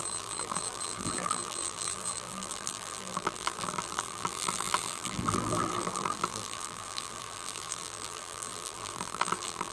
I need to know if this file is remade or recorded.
remade